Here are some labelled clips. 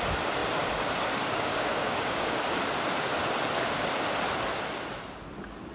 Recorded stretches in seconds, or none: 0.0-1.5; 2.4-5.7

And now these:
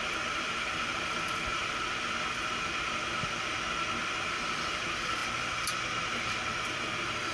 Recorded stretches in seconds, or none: 1.5-4.0; 5.2-6.3

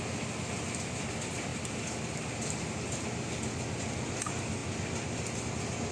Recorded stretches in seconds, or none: 0.0-5.9

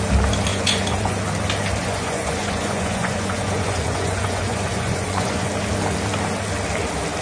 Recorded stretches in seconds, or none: 0.0-0.5; 1.2-1.8; 5.5-7.2

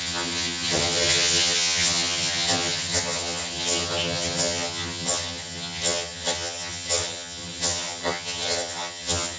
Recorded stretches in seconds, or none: none

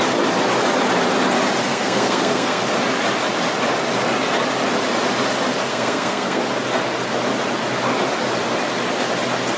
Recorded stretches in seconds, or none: 0.0-1.7; 2.6-5.7; 6.4-9.6

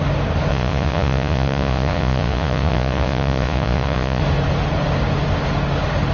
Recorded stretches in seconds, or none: 0.0-0.5; 4.2-6.1

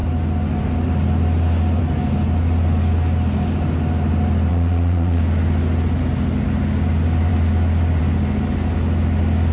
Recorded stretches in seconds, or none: 0.0-4.5; 5.2-9.5